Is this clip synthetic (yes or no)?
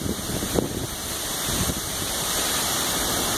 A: yes